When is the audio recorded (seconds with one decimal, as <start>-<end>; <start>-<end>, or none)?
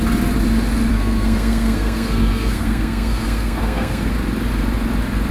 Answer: 0.0-0.9; 4.1-5.3